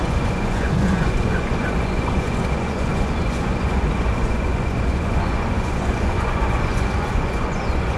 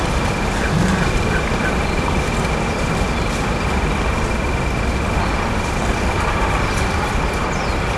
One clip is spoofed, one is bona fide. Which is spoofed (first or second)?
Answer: first